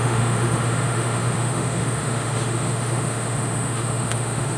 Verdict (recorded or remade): remade